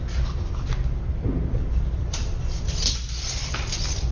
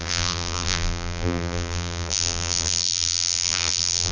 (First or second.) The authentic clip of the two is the first